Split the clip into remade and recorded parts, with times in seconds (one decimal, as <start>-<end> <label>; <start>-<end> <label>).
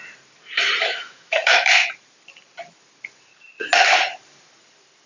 0.0-0.8 recorded; 0.8-1.8 remade; 1.8-5.1 recorded